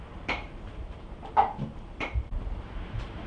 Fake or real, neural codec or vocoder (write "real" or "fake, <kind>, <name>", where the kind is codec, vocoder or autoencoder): fake, vocoder, BigVGAN v2